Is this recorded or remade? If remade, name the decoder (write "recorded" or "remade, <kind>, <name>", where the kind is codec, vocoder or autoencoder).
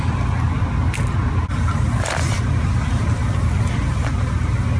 recorded